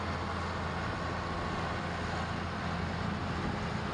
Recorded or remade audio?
recorded